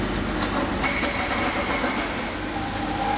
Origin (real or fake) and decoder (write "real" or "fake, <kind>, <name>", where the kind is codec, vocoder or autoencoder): real